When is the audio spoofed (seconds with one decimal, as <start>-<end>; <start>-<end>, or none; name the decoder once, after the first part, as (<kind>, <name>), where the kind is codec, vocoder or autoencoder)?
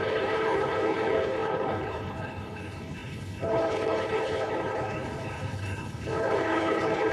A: 0.0-7.1 (codec, HILCodec)